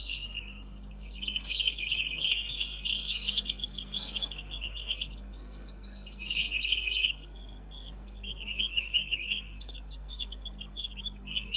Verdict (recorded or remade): remade